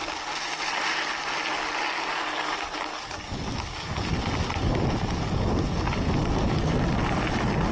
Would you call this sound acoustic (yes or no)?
yes